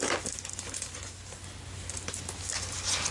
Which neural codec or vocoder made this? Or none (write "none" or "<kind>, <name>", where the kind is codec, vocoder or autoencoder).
none